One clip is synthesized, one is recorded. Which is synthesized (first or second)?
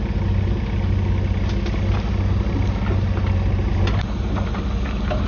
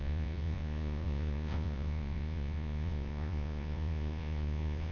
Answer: second